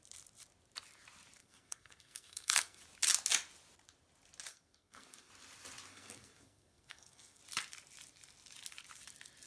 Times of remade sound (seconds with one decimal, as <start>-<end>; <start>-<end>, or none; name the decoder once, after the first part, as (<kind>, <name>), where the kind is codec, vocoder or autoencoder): 1.4-2.8 (codec, SNAC); 4.5-5.3; 5.9-7.4